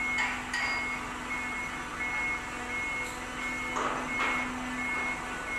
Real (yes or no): yes